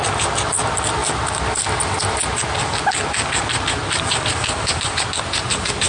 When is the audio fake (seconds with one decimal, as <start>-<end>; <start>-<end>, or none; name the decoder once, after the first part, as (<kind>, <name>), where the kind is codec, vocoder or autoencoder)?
3.8-5.9 (vocoder, BigVGAN v2)